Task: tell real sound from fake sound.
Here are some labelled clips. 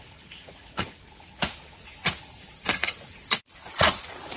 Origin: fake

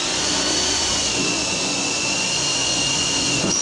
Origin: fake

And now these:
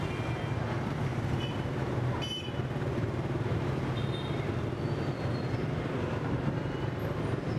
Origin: real